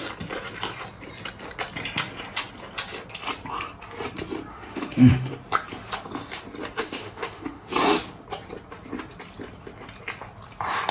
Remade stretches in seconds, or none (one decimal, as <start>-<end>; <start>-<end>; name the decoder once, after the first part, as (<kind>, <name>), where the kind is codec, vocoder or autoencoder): 4.5-5.3 (autoencoder, DAC-VAE); 6.8-7.7